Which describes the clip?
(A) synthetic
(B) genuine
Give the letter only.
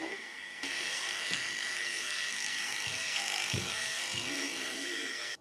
A